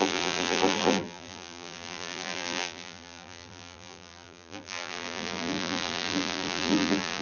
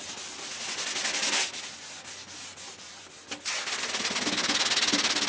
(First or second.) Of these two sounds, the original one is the second